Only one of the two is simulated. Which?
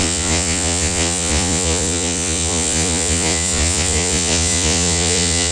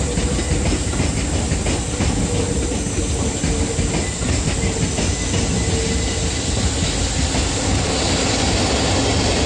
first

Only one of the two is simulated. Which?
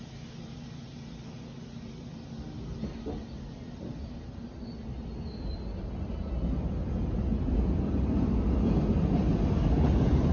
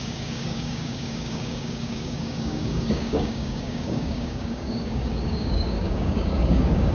second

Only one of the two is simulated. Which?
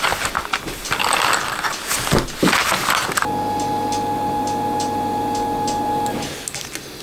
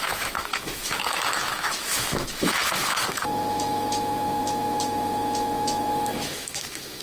second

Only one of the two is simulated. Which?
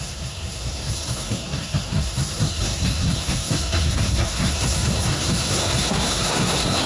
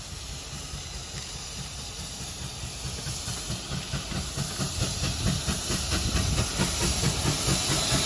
first